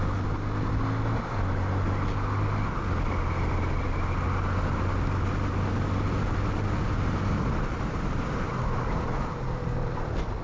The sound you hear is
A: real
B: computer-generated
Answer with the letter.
A